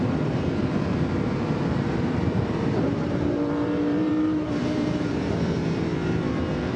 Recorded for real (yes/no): no